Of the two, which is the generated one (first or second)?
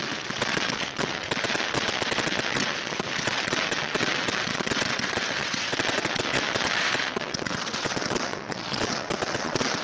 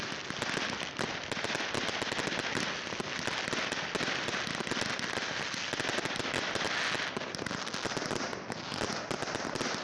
first